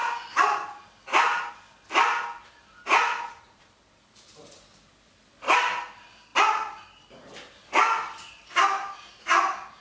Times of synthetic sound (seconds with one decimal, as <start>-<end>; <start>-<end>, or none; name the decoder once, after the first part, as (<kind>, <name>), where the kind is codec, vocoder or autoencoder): 2.9-3.7 (vocoder, Vocos)